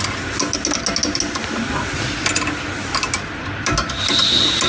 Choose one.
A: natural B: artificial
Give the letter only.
A